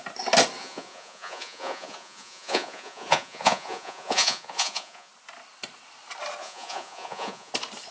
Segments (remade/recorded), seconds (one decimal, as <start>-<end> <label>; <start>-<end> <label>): 0.0-0.6 recorded; 0.6-5.1 remade; 5.1-6.4 recorded; 6.4-7.5 remade; 7.5-7.9 recorded